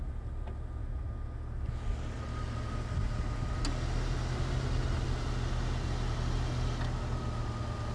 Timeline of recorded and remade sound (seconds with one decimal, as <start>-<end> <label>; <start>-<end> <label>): 0.0-7.9 recorded